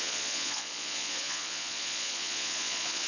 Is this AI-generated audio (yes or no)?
yes